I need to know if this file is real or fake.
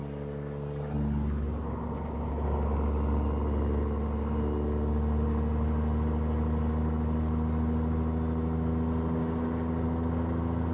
real